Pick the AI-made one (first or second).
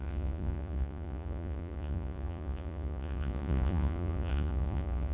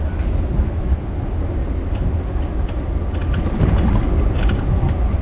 first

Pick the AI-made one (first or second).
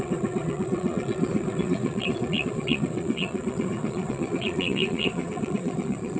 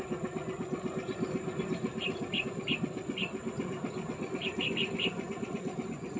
first